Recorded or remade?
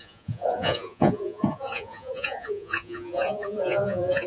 remade